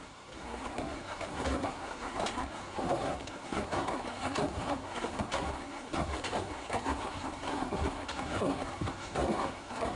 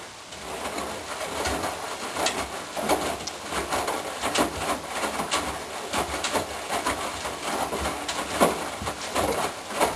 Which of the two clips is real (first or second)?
second